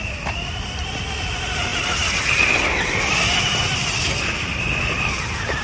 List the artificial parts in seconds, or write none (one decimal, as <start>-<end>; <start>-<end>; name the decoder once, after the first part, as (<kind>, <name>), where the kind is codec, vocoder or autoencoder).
none